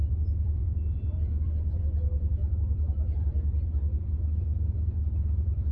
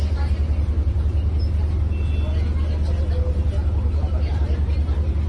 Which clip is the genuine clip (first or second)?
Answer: second